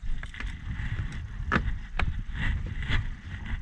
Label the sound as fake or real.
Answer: real